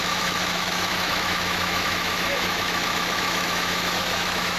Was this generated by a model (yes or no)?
yes